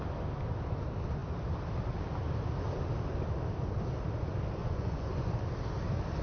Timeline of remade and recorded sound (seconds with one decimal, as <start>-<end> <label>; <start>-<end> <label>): 0.0-4.6 recorded; 4.6-5.3 remade; 5.3-6.2 recorded